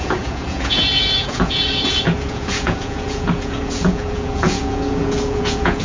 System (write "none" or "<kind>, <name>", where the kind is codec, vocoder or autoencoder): vocoder, Vocos